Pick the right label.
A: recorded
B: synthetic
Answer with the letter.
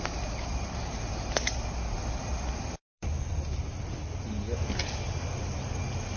B